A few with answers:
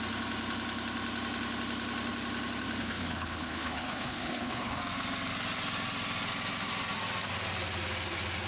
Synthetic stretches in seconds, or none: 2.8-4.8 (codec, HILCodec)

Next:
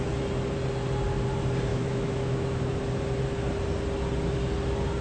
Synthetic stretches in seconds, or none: 1.7-2.6 (autoencoder, DAC-VAE)

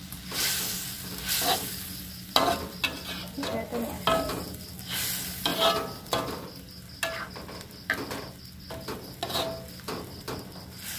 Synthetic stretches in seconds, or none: none

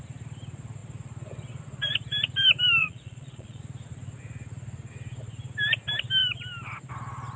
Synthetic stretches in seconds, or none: 2.8-3.6 (vocoder, Vocos)

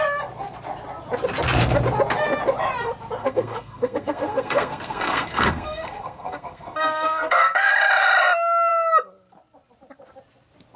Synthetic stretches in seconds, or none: 3.2-7.7 (codec, SNAC)

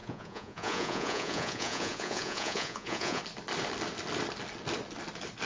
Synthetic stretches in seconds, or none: 0.0-3.2 (vocoder, Vocos)

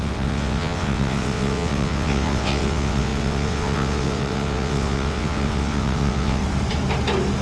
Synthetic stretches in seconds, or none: 0.0-6.4 (vocoder, WaveNeXt)